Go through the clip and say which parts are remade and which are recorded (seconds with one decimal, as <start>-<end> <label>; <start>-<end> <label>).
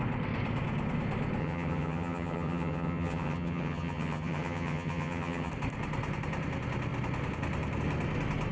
0.0-1.4 recorded; 1.4-5.5 remade; 5.5-8.5 recorded